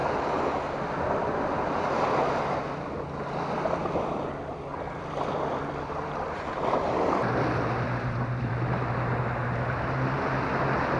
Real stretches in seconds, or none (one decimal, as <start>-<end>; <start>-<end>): 0.0-4.7; 8.9-11.0